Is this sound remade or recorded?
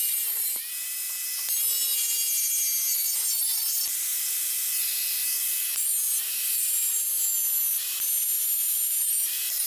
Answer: recorded